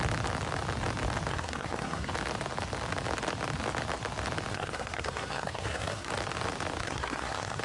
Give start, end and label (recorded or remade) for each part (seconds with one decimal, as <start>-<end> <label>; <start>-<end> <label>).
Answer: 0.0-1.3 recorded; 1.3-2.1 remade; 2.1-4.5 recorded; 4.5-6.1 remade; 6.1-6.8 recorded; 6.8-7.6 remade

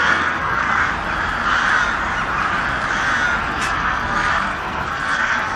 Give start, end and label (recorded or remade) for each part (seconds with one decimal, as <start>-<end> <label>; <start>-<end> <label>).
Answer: 0.0-0.8 remade; 0.8-3.4 recorded; 3.4-5.6 remade

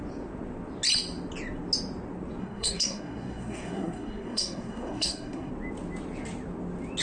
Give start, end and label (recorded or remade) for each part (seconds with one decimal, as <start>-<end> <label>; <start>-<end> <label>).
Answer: 0.0-2.4 recorded; 2.4-5.5 remade; 5.5-7.0 recorded